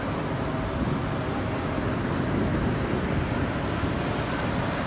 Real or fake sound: real